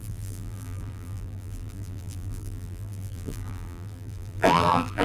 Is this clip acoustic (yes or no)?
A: no